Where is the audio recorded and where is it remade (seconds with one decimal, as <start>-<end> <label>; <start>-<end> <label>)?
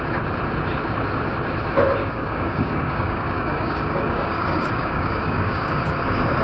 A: 0.0-2.0 recorded; 2.0-5.8 remade; 5.8-6.4 recorded